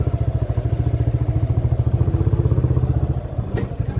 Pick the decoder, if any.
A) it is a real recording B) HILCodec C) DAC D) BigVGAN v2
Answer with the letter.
A